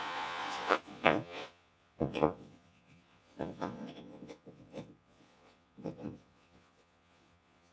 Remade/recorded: remade